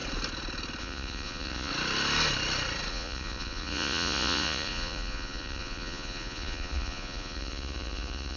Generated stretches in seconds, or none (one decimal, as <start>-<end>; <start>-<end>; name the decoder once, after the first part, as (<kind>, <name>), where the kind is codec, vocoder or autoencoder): 0.8-1.7 (vocoder, Vocos); 2.9-8.4